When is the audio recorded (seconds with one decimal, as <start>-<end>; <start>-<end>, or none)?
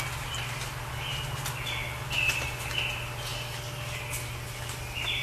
0.0-5.2